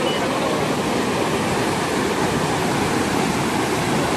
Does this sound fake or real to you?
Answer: real